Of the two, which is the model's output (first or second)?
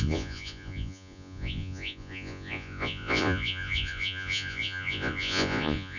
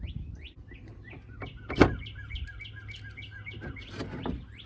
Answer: first